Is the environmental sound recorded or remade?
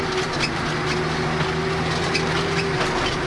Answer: recorded